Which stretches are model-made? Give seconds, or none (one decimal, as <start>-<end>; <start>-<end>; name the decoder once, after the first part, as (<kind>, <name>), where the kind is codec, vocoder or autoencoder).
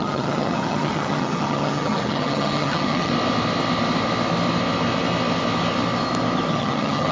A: 0.0-3.1 (vocoder, HiFi-GAN); 6.5-7.1